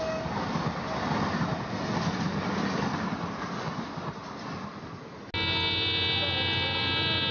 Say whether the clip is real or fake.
real